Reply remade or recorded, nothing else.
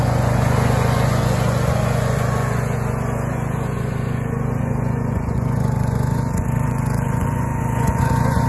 remade